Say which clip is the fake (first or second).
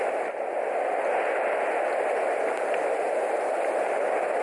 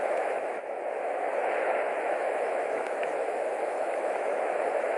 second